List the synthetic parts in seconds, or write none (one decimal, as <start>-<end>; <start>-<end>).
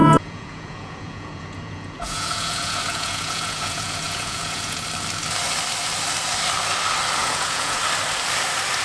0.0-4.8; 7.2-7.8